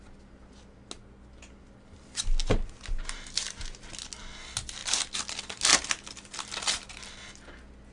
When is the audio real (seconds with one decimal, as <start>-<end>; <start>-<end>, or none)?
0.0-7.9